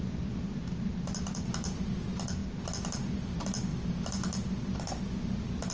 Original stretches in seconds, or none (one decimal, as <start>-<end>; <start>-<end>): 0.0-5.7